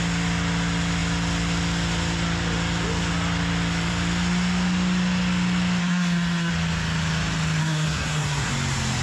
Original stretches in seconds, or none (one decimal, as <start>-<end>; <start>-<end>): 0.0-5.8; 6.5-7.6; 8.5-9.0